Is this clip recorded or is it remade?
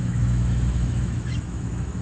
remade